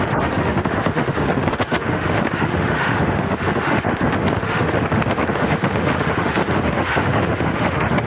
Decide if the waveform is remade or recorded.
remade